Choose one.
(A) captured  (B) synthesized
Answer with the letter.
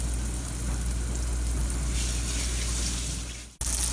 A